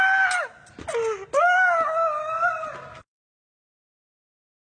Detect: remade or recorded recorded